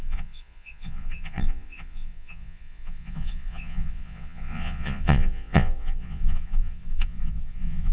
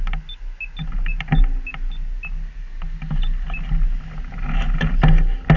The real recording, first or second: second